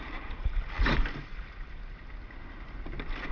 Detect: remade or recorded recorded